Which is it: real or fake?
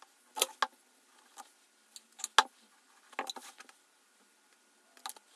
real